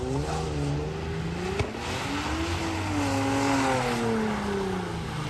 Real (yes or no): yes